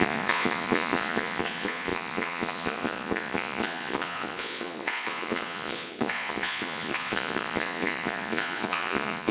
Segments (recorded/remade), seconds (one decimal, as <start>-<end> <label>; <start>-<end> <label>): 0.0-9.3 remade